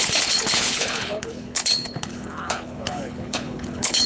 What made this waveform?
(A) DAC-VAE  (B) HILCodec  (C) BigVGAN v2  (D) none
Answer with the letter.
B